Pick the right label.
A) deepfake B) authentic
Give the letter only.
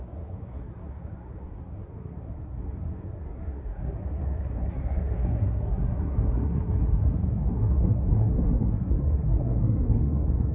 A